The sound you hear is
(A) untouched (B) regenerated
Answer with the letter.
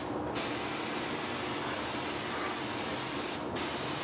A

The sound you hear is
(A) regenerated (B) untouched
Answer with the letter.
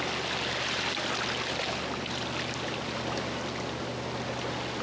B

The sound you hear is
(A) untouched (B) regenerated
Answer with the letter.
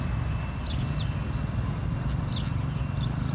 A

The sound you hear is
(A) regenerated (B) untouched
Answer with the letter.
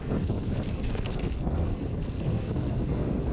A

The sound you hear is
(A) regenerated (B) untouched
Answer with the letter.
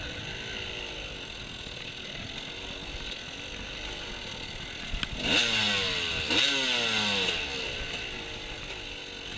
B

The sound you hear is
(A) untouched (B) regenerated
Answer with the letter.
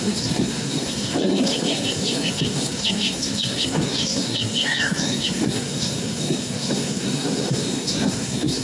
B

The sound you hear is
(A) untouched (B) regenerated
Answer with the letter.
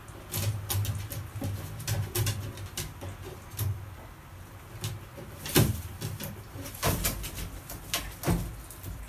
A